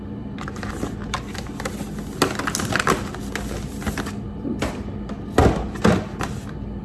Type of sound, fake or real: real